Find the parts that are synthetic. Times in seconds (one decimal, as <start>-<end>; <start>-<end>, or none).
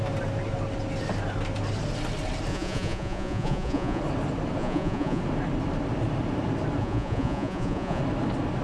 2.5-4.0; 4.6-5.2; 6.8-8.0